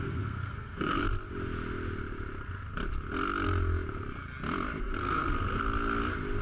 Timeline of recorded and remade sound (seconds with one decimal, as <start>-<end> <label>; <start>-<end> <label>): 0.0-1.0 remade; 1.0-4.8 recorded; 4.8-5.6 remade; 5.6-6.4 recorded

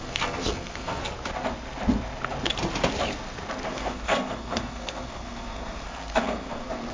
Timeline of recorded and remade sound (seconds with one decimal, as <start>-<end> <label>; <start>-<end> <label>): 0.0-1.0 remade; 1.0-3.7 recorded; 3.7-6.9 remade

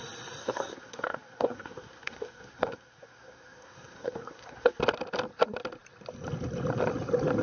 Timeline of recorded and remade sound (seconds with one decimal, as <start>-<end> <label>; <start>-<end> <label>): 0.0-0.4 recorded; 0.4-4.8 remade; 4.8-7.4 recorded

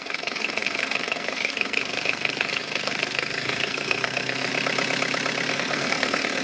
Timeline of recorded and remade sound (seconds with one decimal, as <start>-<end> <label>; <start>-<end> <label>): 0.0-4.5 remade; 4.5-5.5 recorded; 5.5-6.4 remade

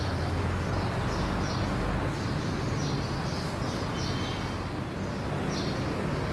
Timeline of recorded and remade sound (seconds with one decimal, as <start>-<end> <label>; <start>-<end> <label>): 0.0-6.3 recorded

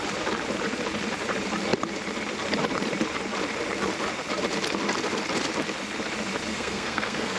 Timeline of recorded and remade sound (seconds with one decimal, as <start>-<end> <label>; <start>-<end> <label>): 0.0-6.5 recorded; 6.5-7.4 remade